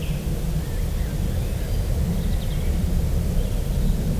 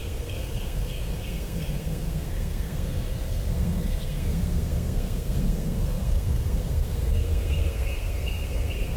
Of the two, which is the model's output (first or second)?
second